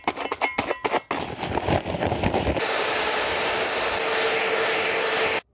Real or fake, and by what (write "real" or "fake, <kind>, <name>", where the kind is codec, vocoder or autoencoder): real